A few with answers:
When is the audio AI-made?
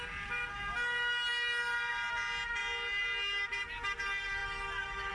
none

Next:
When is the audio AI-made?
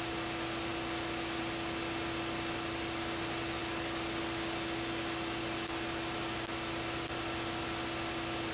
none